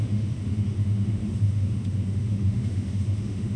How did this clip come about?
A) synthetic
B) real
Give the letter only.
A